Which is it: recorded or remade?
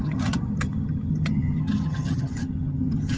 remade